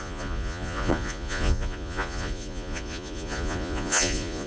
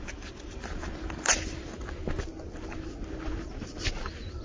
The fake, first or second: first